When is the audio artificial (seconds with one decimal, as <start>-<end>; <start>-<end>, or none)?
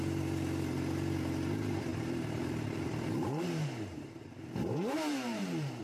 1.9-5.8